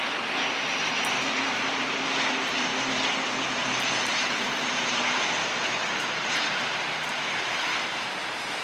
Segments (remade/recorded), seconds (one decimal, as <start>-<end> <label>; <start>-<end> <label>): 0.0-0.9 recorded; 0.9-2.7 remade; 2.7-3.5 recorded; 3.5-5.4 remade; 5.4-6.0 recorded; 6.0-8.6 remade